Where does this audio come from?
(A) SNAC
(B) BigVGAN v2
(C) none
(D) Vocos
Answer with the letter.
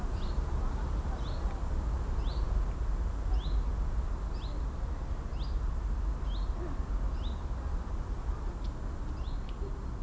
C